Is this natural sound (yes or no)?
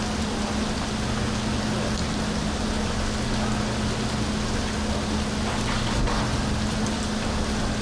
yes